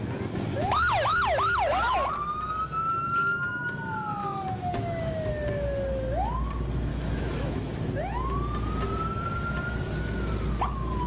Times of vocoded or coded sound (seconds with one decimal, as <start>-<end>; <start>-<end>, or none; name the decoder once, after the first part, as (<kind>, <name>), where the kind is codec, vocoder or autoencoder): 4.2-5.3 (autoencoder, DAC-VAE); 6.9-7.8